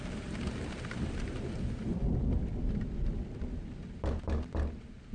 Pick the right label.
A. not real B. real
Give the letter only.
B